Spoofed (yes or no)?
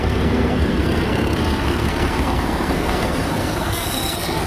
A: yes